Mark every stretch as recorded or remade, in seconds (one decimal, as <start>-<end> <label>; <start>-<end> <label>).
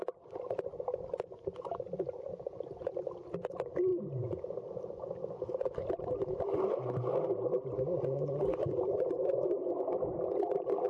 0.0-10.9 recorded